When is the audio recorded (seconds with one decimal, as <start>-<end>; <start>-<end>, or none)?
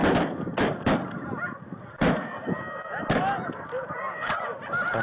0.0-5.0